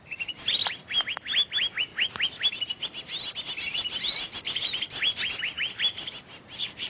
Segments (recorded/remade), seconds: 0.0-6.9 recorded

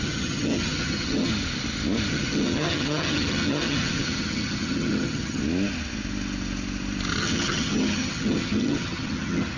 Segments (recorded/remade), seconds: 0.0-1.3 remade; 1.3-2.1 recorded; 2.1-5.4 remade; 5.4-7.2 recorded; 7.2-9.6 remade

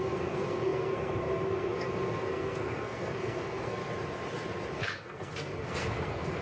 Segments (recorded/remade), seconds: 0.0-3.8 remade; 3.8-4.7 recorded; 4.7-6.4 remade